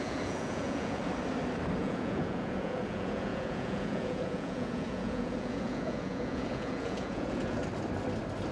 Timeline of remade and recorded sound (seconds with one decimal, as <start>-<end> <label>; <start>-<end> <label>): 0.0-1.0 remade; 1.0-1.8 recorded; 1.8-7.6 remade; 7.6-8.5 recorded